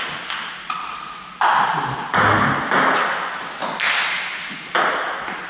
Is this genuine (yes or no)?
yes